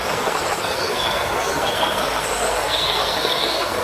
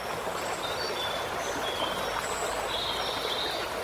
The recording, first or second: second